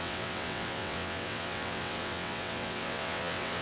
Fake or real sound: fake